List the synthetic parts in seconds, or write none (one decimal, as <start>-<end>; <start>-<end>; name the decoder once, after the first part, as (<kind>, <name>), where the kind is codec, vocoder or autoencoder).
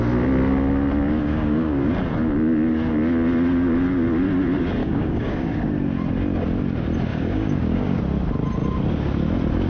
1.2-1.9 (codec, DAC); 4.8-5.6; 7.1-8.0